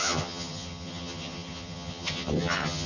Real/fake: fake